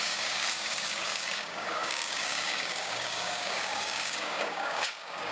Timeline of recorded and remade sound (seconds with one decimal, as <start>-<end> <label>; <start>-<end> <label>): 0.0-5.3 remade